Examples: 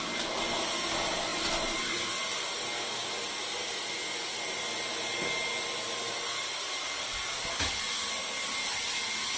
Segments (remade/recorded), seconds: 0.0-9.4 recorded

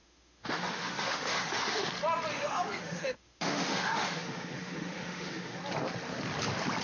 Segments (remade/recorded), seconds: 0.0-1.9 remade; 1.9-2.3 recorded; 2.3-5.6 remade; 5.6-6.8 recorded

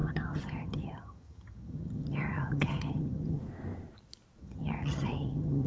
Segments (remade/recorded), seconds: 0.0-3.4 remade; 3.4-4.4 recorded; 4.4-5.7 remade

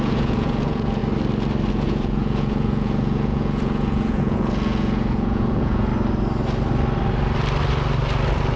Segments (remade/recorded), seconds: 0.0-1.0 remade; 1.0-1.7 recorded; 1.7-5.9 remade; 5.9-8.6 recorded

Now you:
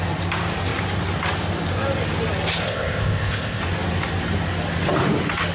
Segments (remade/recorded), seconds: 0.0-2.6 recorded; 2.6-3.6 remade; 3.6-5.5 recorded